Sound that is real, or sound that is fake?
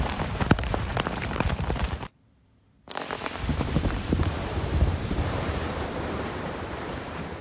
fake